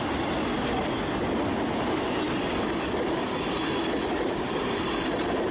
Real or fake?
real